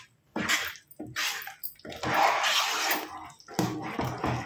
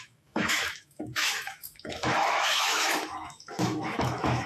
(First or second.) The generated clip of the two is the second